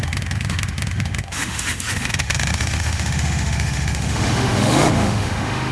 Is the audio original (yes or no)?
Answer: no